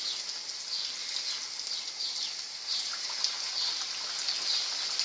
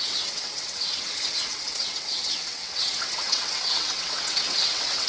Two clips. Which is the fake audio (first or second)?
second